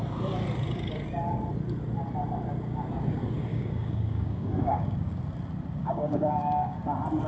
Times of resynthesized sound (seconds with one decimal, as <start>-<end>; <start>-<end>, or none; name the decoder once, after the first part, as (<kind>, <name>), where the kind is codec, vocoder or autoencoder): 3.5-5.2 (codec, DAC); 5.8-6.8